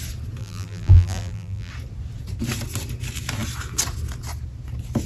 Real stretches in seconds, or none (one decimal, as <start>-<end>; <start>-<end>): 0.0-0.4; 1.7-5.1